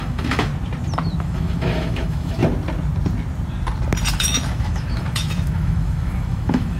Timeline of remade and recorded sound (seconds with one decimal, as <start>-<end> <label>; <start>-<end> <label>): 0.0-0.5 remade; 0.5-1.2 recorded; 1.2-2.4 remade; 2.4-4.1 recorded; 4.1-6.8 remade

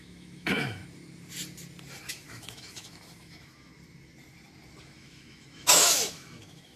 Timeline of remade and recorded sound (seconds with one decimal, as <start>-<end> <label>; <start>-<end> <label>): 0.0-0.8 remade; 0.8-2.1 recorded; 2.1-3.7 remade; 3.7-4.8 recorded; 4.8-6.8 remade

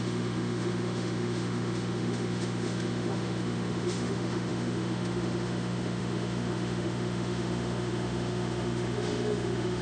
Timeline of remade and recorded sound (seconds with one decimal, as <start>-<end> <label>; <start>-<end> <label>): 0.0-9.8 remade

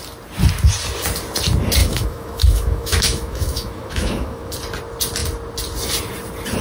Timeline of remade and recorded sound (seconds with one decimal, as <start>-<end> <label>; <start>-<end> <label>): 0.0-1.8 recorded; 1.8-4.5 remade; 4.5-6.6 recorded